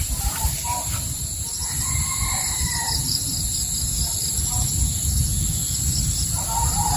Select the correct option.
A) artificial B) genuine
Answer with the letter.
A